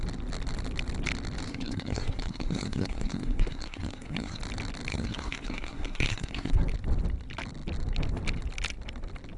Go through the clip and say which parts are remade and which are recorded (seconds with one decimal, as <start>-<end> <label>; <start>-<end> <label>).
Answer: 0.0-1.5 recorded; 1.5-4.4 remade; 4.4-4.9 recorded; 4.9-6.6 remade; 6.6-9.4 recorded